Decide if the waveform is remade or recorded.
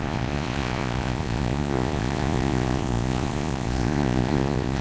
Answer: remade